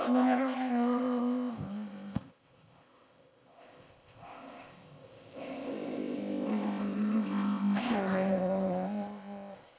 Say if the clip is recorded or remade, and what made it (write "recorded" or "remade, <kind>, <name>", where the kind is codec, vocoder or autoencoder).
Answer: remade, codec, ZipCodec